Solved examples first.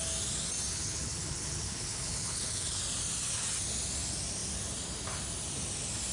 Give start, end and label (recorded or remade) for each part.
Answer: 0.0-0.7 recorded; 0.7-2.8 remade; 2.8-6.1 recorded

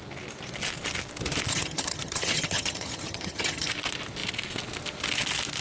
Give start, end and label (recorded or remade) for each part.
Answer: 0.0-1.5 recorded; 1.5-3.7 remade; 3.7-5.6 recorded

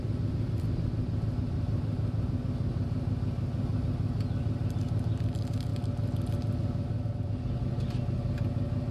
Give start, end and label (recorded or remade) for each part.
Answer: 0.0-8.9 recorded

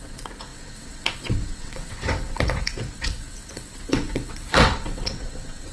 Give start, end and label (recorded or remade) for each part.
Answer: 0.0-5.7 remade

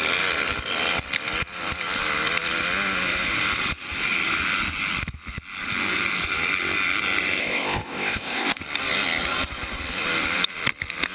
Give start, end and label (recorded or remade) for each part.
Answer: 0.0-7.4 recorded; 7.4-8.6 remade; 8.6-11.1 recorded

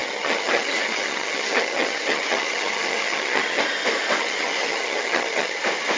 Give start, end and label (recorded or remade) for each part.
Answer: 0.0-3.6 remade; 3.6-4.2 recorded; 4.2-5.6 remade; 5.6-6.0 recorded

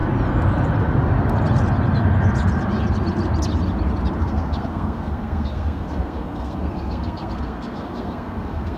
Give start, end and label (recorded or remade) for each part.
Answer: 0.0-4.2 recorded; 4.2-8.8 remade